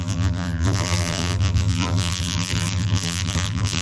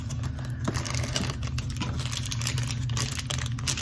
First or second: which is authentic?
second